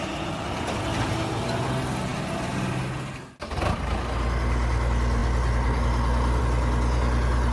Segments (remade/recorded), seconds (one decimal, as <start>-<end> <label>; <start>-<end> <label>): 0.0-7.5 recorded